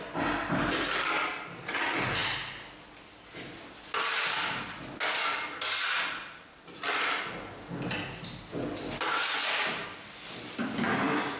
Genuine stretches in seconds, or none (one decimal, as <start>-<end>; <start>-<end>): 0.0-11.4